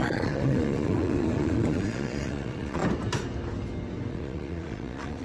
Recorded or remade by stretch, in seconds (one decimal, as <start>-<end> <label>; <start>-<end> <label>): 0.0-2.8 remade; 2.8-4.1 recorded; 4.1-5.2 remade